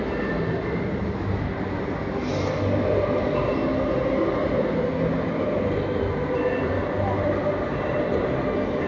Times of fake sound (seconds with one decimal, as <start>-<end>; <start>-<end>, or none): none